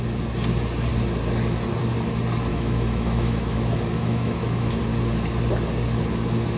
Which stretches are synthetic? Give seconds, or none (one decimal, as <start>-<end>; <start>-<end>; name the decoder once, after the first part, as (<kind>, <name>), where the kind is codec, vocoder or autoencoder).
2.5-4.8 (autoencoder, DAC-VAE)